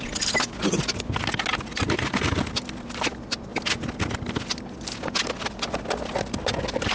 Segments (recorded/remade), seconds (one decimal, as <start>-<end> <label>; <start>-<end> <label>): 0.0-6.9 recorded

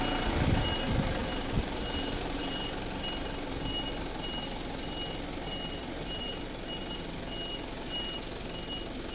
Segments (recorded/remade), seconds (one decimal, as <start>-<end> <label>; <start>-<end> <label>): 0.0-1.2 recorded; 1.2-2.5 remade; 2.5-5.8 recorded; 5.8-6.4 remade; 6.4-9.1 recorded

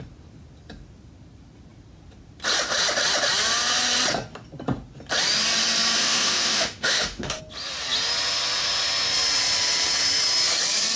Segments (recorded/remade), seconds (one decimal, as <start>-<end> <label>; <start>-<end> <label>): 0.0-6.0 recorded; 6.0-7.4 remade; 7.4-11.0 recorded

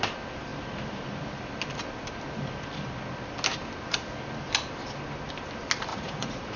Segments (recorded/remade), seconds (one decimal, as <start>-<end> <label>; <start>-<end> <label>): 0.0-5.9 recorded; 5.9-6.6 remade

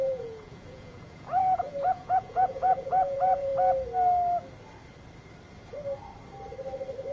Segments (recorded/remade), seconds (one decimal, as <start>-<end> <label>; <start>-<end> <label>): 0.0-3.5 remade; 3.5-7.1 recorded

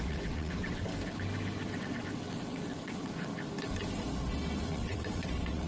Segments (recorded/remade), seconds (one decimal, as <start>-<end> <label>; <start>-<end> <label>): 0.0-0.9 remade; 0.9-1.8 recorded; 1.8-3.3 remade; 3.3-4.7 recorded; 4.7-5.7 remade